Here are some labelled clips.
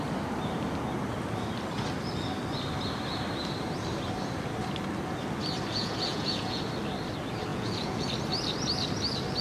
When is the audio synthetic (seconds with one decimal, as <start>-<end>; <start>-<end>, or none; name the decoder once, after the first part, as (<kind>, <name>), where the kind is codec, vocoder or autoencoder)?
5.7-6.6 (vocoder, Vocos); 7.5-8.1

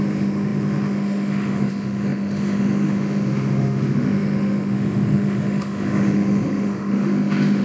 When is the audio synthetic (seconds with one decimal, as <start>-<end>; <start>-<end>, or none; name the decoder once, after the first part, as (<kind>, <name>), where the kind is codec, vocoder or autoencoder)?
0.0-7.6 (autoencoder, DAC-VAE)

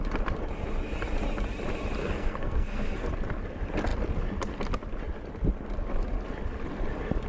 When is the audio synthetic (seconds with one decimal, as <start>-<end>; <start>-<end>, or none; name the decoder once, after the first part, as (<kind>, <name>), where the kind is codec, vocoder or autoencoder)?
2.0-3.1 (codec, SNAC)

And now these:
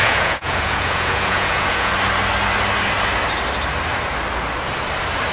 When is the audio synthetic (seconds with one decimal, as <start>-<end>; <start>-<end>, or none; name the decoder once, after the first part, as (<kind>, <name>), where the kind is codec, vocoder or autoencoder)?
0.0-1.9 (vocoder, Vocos)